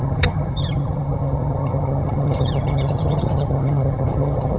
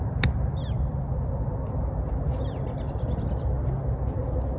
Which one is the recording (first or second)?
second